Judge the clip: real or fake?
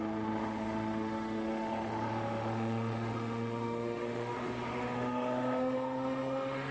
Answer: fake